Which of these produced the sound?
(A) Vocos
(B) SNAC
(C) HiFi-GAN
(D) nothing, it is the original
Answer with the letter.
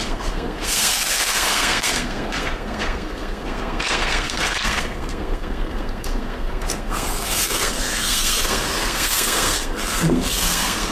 B